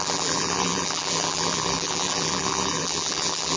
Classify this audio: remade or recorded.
remade